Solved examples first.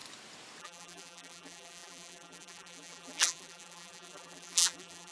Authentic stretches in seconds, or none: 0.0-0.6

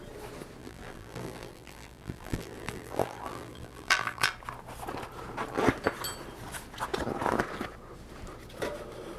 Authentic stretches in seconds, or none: 0.0-0.6; 4.3-9.2

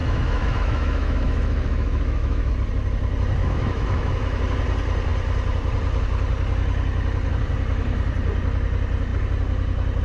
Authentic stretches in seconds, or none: 2.5-3.4; 4.4-10.0

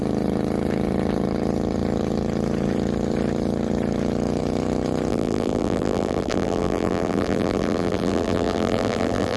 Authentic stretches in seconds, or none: 0.0-5.1

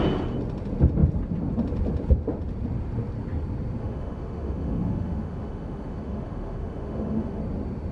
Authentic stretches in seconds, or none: 0.0-3.8; 7.4-7.9

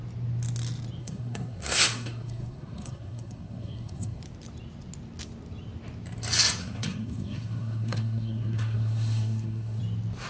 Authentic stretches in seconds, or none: 0.0-1.0; 4.2-6.6; 9.8-10.3

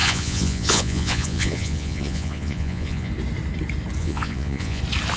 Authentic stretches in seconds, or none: 3.1-4.0; 4.8-5.2

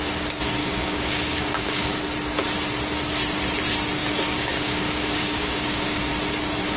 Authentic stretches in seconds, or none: 0.0-0.6; 2.0-4.0; 6.1-6.8